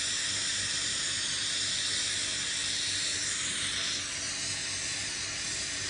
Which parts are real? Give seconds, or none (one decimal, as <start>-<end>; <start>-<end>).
0.0-0.9; 1.5-2.6; 3.4-5.0